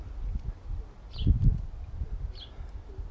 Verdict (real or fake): real